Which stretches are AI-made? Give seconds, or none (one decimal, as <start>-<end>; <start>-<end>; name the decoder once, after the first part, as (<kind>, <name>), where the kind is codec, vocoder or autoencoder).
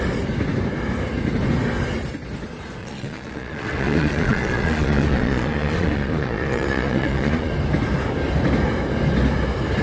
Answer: 2.8-7.5 (vocoder, Vocos)